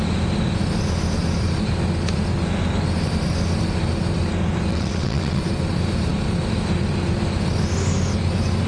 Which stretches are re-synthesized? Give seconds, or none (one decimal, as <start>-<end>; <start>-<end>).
4.7-5.4